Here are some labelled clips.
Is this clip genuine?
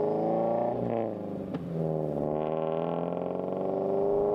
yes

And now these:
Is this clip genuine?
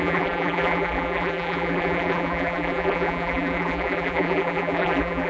no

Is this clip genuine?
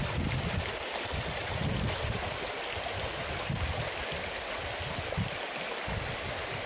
yes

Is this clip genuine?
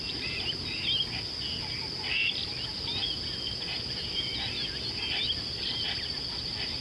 no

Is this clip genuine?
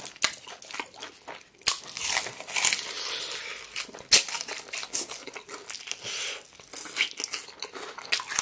yes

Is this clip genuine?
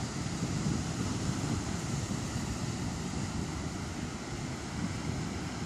no